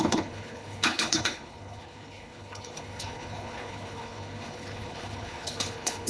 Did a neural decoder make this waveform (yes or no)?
yes